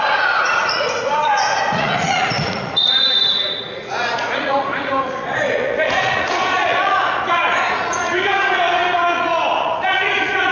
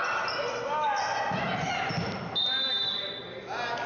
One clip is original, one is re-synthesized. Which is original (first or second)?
second